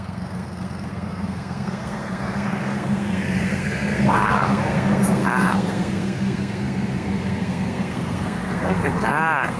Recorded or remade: remade